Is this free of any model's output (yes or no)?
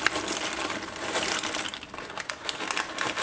yes